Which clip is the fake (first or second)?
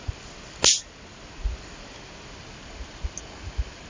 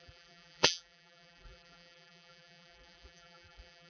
second